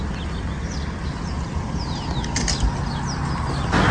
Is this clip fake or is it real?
real